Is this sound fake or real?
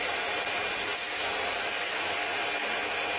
real